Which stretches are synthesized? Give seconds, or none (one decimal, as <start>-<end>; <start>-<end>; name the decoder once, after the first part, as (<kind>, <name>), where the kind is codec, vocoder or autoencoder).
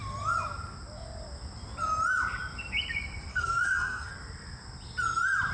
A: 3.3-4.1 (codec, SNAC)